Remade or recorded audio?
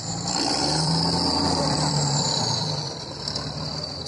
remade